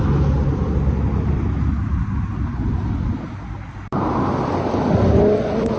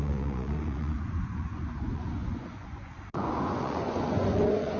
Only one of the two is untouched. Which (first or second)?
first